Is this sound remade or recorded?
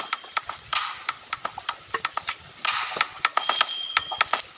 recorded